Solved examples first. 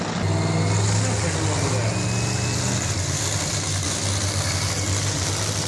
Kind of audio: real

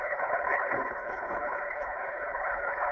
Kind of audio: fake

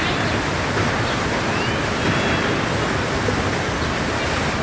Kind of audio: real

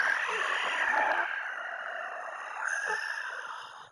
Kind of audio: real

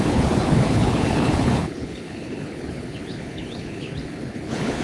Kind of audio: fake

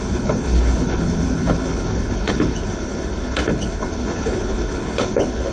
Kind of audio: fake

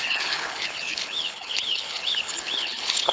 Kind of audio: fake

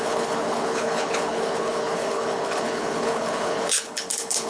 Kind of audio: fake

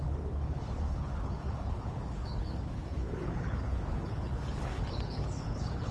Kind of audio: fake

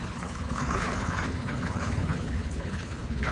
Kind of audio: fake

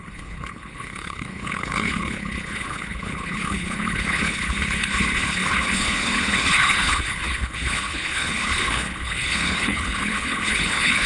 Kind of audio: fake